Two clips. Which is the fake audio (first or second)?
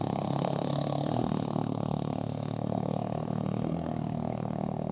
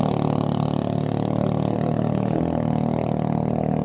first